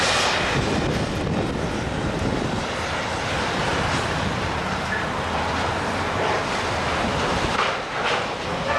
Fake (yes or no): no